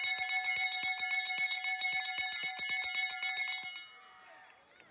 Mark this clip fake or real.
real